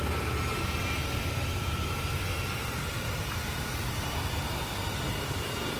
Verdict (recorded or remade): recorded